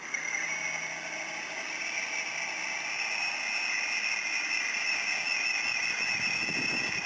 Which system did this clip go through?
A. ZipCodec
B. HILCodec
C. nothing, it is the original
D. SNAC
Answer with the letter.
C